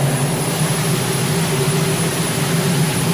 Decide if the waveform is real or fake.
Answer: real